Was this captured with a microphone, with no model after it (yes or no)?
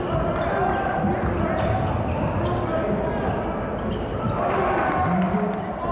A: yes